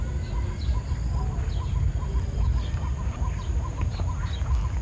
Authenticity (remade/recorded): recorded